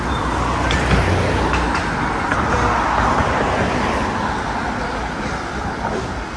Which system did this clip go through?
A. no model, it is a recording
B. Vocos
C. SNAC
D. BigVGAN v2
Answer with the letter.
A